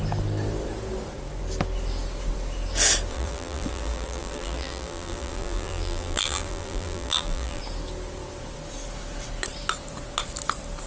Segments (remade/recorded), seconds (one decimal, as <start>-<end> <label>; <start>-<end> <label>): 0.0-3.1 recorded; 3.1-7.6 remade; 7.6-10.9 recorded